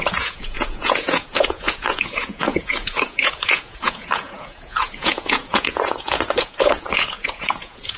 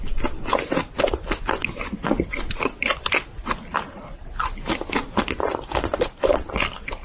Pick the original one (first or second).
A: second